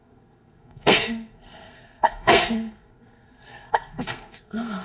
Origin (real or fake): fake